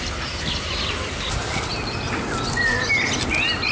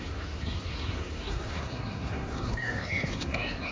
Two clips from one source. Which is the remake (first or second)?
second